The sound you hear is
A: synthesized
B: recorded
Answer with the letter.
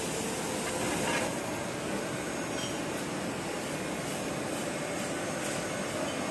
B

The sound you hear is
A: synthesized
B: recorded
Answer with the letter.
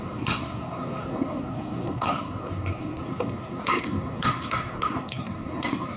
A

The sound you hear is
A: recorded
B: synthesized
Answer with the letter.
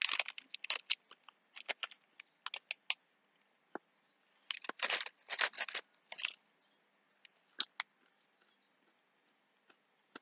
A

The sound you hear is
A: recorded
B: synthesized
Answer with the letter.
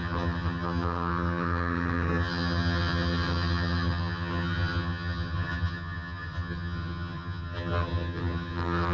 B